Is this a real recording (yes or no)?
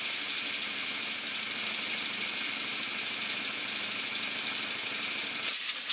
yes